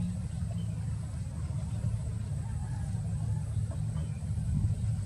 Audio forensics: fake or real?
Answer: real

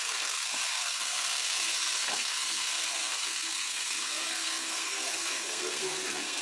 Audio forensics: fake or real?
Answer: fake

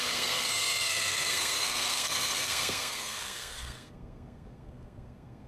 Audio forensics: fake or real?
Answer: fake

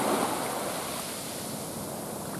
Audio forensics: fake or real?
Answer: real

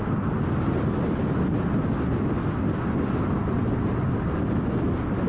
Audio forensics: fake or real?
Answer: real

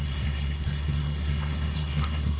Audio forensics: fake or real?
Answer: fake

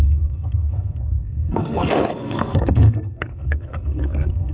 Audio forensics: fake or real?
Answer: fake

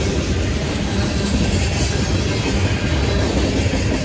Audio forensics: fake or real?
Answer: real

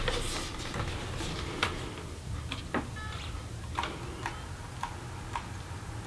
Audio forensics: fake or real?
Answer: real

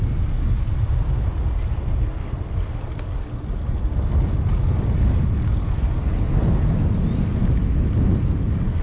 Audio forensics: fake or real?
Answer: real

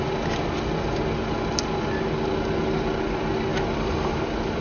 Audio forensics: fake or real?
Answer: real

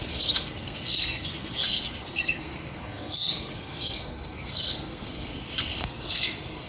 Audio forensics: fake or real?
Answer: fake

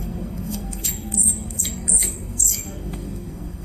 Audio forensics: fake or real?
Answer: fake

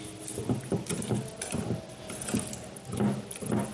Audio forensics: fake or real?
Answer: real